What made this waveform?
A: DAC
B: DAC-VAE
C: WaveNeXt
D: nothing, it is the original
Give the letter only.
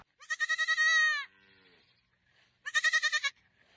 D